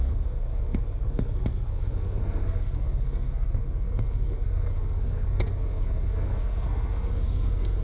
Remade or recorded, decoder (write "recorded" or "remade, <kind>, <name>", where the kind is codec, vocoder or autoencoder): remade, codec, SNAC